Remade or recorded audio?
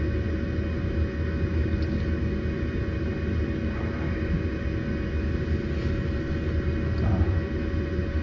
recorded